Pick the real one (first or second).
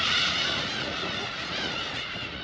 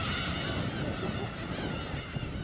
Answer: second